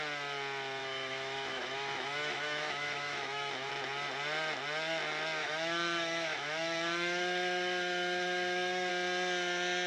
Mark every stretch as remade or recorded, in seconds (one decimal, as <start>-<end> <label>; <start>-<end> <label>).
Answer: 0.0-0.8 recorded; 0.8-3.7 remade; 3.7-5.4 recorded; 5.4-8.9 remade; 8.9-9.9 recorded